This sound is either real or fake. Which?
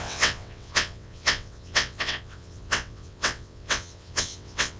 fake